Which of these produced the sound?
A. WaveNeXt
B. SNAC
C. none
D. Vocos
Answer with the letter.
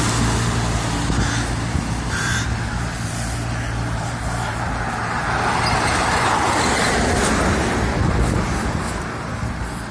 C